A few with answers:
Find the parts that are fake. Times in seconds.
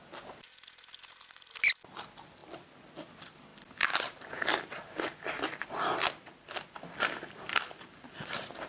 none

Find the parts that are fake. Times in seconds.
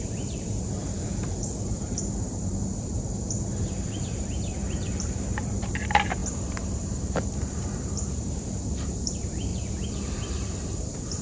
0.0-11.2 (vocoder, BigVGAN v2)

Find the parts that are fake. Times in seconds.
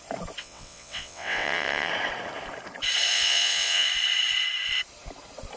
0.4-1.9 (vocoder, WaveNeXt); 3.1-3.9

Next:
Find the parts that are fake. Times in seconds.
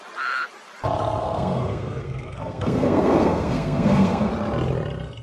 1.2-4.3 (codec, SNAC)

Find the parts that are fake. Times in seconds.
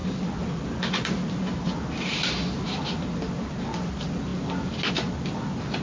none